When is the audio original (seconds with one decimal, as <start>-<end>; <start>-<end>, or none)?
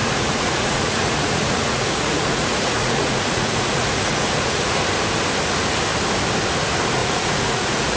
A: 4.8-7.0